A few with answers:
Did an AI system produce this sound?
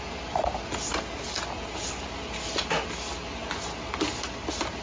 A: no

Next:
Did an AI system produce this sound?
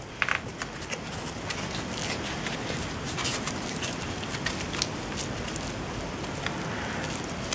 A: no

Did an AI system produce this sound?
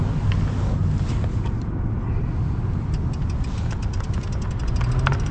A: no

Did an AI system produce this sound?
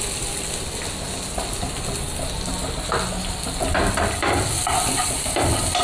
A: no